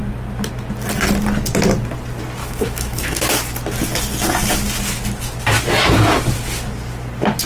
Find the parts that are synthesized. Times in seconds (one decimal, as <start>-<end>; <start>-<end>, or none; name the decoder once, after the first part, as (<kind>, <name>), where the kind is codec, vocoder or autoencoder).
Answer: 2.4-3.4 (autoencoder, DAC-VAE)